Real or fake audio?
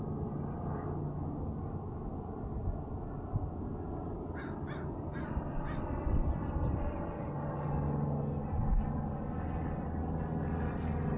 real